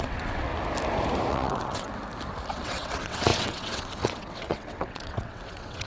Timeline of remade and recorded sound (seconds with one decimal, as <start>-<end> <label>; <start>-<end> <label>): 0.0-0.5 remade; 0.5-1.3 recorded; 1.3-1.9 remade; 1.9-2.5 recorded; 2.5-5.9 remade